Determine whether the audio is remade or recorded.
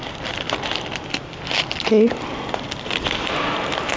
recorded